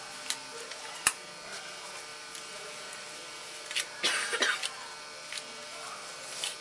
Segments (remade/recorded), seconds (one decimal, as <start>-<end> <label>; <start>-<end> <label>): 0.0-0.5 recorded; 0.5-1.0 remade; 1.0-2.1 recorded; 2.1-4.6 remade; 4.6-5.6 recorded; 5.6-6.6 remade